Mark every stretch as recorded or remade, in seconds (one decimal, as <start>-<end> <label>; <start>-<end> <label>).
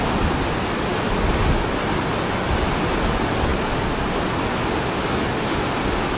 0.0-6.2 recorded